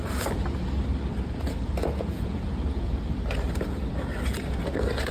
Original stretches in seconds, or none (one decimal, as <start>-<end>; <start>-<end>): 0.0-1.8; 3.1-5.1